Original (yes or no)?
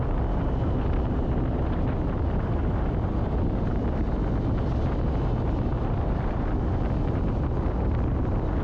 yes